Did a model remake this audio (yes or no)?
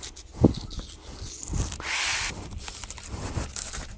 no